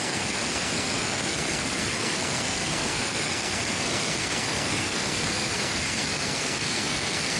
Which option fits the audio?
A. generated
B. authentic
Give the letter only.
A